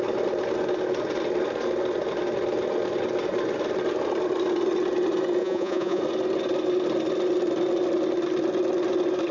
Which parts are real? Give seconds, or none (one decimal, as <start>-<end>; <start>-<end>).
0.0-5.4; 6.0-9.3